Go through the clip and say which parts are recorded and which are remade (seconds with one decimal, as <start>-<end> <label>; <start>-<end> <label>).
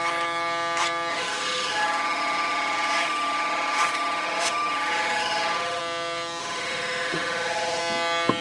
0.0-1.1 recorded; 1.1-5.8 remade; 5.8-6.4 recorded; 6.4-7.8 remade; 7.8-8.4 recorded